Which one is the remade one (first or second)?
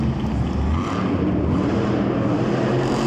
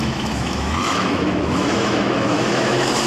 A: second